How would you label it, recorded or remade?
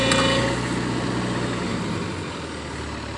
recorded